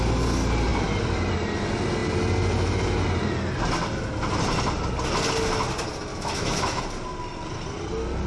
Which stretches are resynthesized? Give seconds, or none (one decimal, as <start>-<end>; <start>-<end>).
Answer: 6.1-6.8